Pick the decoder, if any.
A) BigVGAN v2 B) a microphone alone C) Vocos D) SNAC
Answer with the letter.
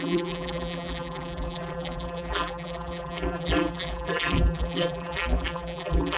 A